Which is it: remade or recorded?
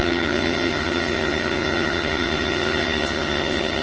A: remade